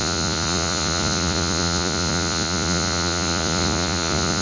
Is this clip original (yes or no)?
no